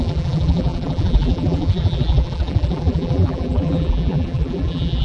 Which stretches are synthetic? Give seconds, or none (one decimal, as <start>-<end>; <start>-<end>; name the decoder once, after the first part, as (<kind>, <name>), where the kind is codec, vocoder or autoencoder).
0.0-5.0 (vocoder, BigVGAN v2)